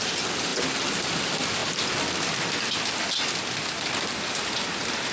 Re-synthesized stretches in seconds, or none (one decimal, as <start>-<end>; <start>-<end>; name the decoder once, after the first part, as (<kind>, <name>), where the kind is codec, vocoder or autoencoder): none